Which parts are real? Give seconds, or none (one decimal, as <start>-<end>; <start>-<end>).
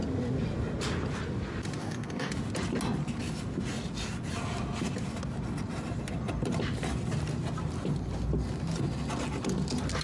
0.0-1.8; 2.3-10.0